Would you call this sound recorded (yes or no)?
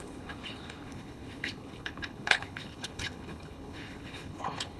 no